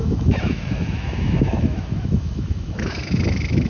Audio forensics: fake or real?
fake